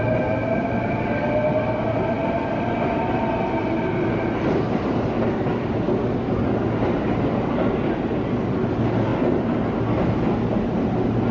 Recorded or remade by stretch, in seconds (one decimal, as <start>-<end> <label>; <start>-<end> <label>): 0.0-11.3 recorded